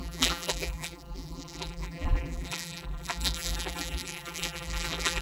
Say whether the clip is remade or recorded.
remade